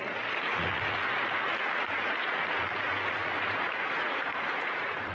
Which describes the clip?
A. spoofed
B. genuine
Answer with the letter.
A